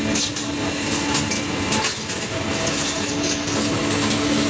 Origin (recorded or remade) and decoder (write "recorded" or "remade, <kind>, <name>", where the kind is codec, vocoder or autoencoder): recorded